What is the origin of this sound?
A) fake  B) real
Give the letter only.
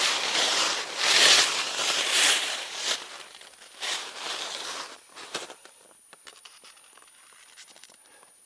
A